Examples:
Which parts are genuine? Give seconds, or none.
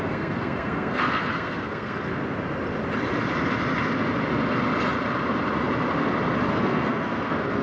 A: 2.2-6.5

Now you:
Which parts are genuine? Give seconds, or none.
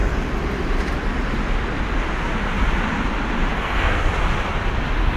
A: 0.0-3.5; 4.1-5.2